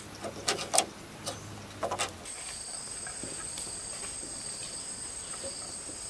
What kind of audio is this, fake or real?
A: real